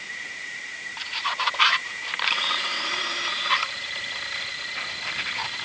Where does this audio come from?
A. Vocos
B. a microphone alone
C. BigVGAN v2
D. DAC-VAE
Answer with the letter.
C